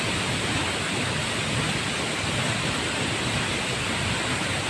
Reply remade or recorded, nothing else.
recorded